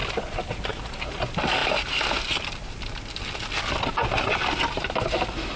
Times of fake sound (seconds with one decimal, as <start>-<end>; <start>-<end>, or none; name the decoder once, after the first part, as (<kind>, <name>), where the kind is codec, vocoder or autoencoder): none